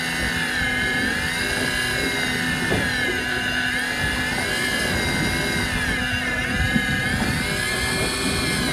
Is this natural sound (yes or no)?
yes